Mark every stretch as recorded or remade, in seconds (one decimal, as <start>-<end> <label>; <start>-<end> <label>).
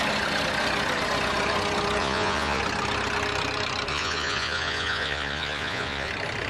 0.0-2.0 recorded; 2.0-2.6 remade; 2.6-3.9 recorded; 3.9-6.1 remade; 6.1-6.5 recorded